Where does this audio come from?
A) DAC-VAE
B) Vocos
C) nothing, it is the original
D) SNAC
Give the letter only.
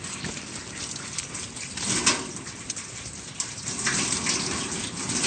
C